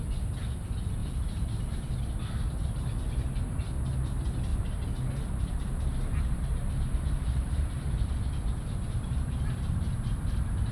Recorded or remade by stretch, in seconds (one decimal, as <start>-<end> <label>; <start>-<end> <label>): 0.0-1.0 recorded; 1.0-1.9 remade; 1.9-4.5 recorded; 4.5-9.4 remade; 9.4-10.7 recorded